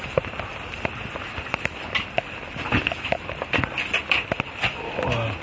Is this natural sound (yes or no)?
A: yes